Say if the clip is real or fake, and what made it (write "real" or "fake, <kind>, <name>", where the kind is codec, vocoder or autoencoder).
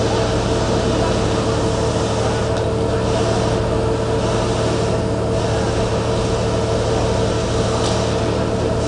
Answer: real